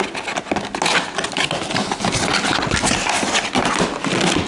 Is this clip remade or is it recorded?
recorded